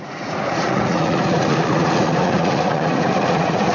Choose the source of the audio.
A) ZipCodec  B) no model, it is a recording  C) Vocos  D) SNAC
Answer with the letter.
C